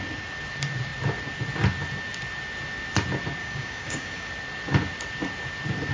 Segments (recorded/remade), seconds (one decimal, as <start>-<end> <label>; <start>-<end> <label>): 0.0-3.4 recorded; 3.4-4.3 remade; 4.3-5.9 recorded